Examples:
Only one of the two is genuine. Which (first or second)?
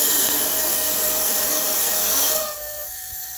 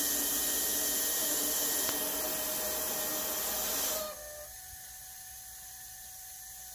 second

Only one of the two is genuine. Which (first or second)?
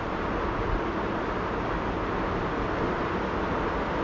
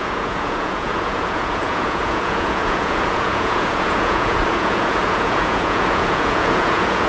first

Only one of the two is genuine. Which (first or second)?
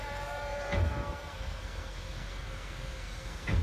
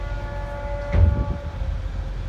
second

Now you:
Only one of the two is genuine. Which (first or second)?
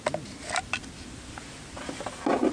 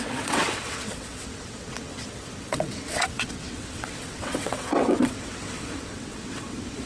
first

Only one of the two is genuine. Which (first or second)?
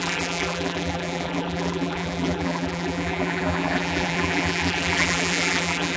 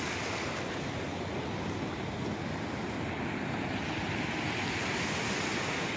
second